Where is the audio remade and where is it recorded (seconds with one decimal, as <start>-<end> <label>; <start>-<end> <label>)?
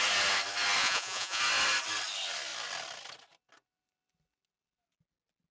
0.0-0.8 recorded; 0.8-1.4 remade; 1.4-5.5 recorded